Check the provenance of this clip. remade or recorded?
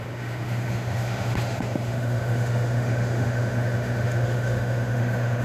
remade